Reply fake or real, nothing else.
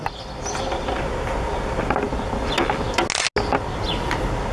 real